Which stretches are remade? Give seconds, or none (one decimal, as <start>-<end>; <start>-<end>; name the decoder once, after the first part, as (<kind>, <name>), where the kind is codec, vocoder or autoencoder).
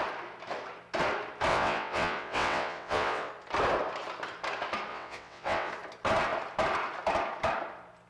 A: 1.5-3.3 (vocoder, WaveNeXt); 4.9-5.7